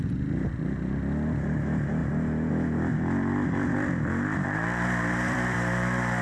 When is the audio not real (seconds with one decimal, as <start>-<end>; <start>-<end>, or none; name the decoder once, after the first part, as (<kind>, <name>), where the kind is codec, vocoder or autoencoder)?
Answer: 2.0-2.5 (vocoder, BigVGAN v2); 2.9-6.2